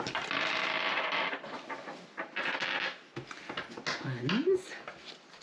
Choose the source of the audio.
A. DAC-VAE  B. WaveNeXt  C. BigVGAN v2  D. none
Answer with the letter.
D